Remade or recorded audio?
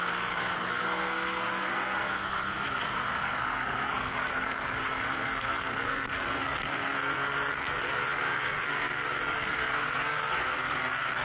remade